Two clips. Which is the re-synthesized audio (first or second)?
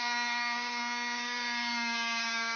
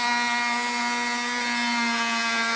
first